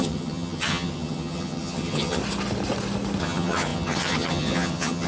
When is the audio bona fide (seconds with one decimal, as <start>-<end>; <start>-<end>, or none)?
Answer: 2.2-3.2